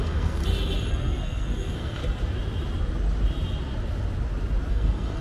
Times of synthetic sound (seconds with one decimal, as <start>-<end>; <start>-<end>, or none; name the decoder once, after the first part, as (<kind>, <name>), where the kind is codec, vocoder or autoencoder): 0.0-0.4 (codec, SNAC); 0.9-2.0; 4.7-5.2